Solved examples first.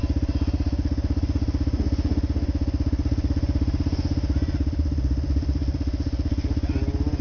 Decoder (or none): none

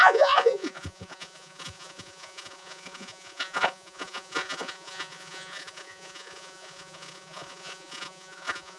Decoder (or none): vocoder, Vocos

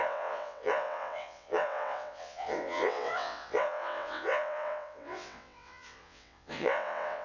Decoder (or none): vocoder, WaveNeXt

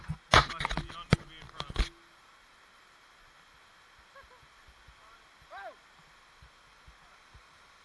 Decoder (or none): none